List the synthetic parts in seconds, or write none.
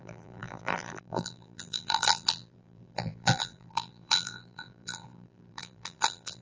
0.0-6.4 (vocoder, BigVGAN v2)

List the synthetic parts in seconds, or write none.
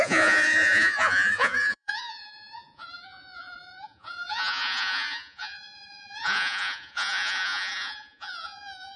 0.0-9.0 (vocoder, Vocos)